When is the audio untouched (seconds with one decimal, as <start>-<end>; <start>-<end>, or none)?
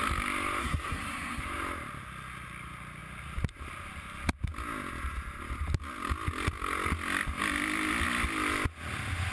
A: 0.0-0.6; 1.4-9.3